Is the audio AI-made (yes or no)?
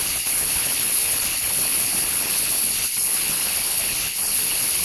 yes